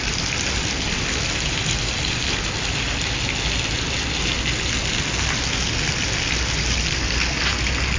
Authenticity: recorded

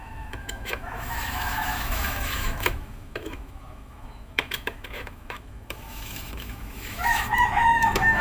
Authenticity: remade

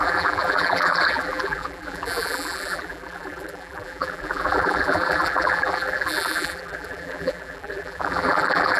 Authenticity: remade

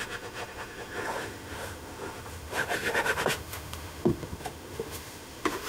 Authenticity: remade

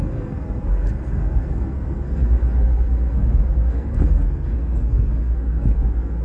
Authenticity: remade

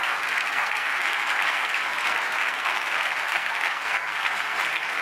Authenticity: remade